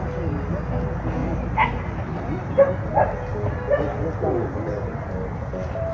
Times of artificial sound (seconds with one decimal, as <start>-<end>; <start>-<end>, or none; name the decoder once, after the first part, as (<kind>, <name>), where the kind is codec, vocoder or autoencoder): 1.2-2.9 (vocoder, BigVGAN v2)